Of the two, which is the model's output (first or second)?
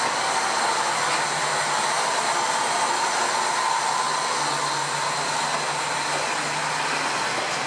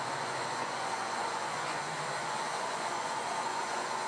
second